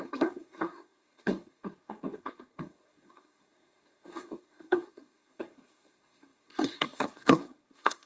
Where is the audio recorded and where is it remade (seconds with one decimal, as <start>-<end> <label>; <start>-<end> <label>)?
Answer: 0.0-8.1 remade